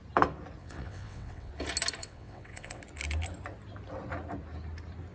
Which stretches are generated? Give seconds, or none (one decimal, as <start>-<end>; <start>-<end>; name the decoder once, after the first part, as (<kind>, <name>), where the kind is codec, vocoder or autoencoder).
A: 0.6-1.5 (vocoder, WaveNeXt); 2.0-2.8